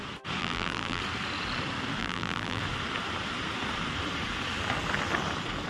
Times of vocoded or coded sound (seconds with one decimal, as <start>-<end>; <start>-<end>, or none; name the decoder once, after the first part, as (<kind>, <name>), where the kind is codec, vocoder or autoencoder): 0.4-1.0 (vocoder, BigVGAN v2); 2.0-2.6